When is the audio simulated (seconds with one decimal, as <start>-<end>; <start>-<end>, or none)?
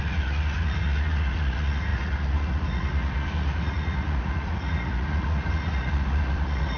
0.0-6.8